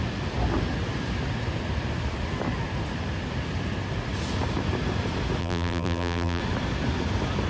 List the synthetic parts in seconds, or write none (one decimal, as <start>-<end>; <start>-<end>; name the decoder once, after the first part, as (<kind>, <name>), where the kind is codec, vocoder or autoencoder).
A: 5.4-6.4 (vocoder, BigVGAN v2)